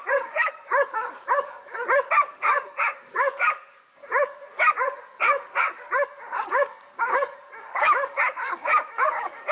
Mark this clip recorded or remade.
remade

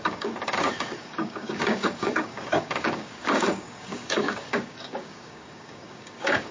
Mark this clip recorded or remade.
remade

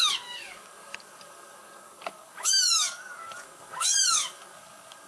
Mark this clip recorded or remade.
remade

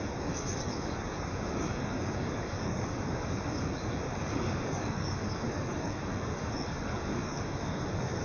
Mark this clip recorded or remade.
remade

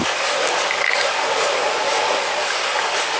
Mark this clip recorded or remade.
remade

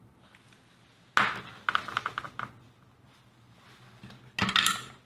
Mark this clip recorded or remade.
recorded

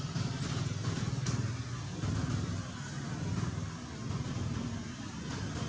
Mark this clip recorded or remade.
recorded